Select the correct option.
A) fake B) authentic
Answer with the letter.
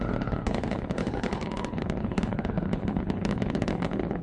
A